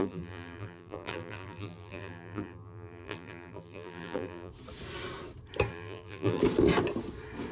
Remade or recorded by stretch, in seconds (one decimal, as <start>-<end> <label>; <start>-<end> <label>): 0.0-4.5 remade; 4.5-5.7 recorded; 5.7-6.4 remade; 6.4-7.5 recorded